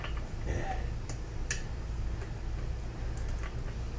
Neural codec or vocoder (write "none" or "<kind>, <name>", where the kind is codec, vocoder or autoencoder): none